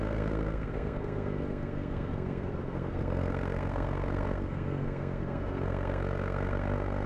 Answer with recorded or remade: remade